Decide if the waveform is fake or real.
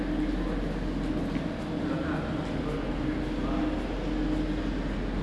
real